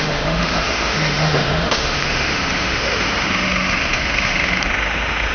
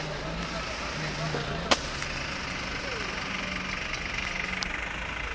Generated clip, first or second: first